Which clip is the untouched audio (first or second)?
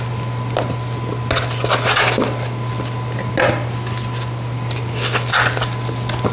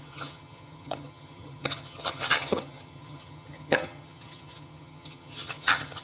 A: first